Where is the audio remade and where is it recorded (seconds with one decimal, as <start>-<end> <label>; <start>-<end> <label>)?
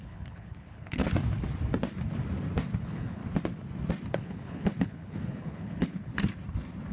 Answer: 0.0-1.0 remade; 1.0-2.8 recorded; 2.8-3.2 remade; 3.2-4.1 recorded; 4.1-6.1 remade; 6.1-6.9 recorded